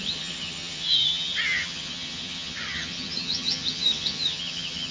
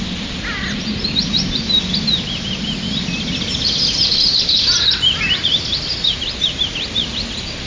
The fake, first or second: first